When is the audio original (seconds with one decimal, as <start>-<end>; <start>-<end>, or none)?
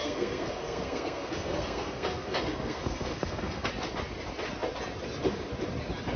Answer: 3.7-6.2